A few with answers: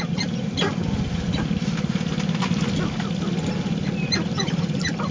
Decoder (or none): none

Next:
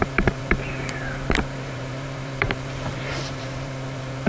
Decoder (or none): vocoder, BigVGAN v2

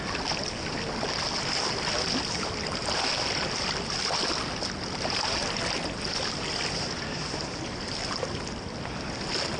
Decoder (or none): none